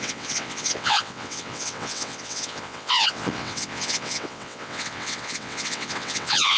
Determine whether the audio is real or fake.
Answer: fake